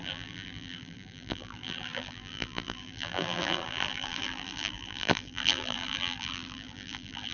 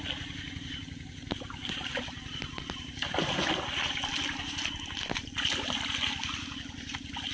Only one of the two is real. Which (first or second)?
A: second